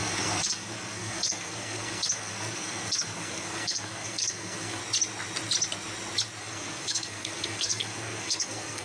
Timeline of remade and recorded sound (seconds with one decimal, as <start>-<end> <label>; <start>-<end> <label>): 0.0-4.8 remade; 4.8-6.4 recorded; 6.4-8.8 remade